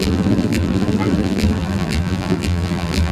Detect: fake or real fake